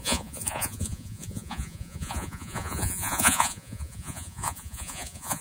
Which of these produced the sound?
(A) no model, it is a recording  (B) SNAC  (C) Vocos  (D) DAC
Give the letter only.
C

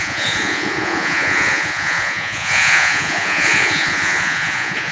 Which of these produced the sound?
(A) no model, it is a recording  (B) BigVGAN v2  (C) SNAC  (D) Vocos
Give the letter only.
D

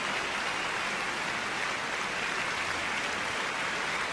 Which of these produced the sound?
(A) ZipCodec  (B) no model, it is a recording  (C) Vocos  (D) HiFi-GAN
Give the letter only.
B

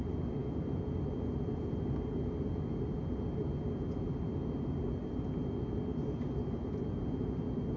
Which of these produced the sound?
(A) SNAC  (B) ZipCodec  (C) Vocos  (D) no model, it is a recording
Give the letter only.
D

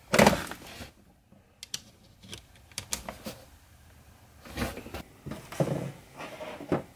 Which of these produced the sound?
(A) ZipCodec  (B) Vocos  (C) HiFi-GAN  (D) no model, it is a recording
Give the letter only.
D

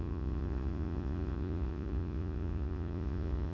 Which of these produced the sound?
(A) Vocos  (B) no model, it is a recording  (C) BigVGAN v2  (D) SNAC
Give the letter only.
A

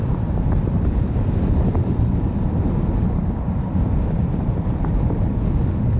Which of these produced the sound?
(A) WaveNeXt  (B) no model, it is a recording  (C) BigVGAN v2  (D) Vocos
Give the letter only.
B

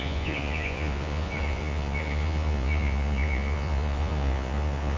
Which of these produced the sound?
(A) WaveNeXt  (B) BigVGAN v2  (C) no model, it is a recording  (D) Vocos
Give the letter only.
D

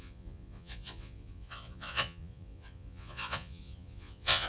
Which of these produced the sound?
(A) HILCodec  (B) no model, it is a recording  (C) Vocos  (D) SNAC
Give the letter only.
C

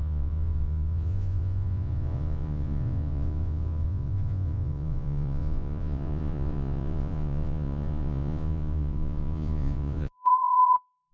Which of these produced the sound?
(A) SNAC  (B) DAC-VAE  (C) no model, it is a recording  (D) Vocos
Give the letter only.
D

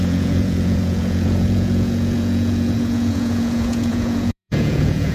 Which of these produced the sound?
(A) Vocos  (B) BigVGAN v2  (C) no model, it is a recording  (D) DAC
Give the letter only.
A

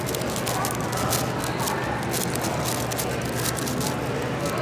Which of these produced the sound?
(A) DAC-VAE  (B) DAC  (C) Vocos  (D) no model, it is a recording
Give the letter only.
D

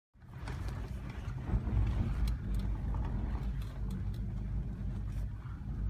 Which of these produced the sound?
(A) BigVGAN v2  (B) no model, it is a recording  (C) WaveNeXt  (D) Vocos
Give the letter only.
B